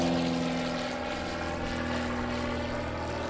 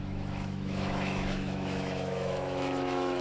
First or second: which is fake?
second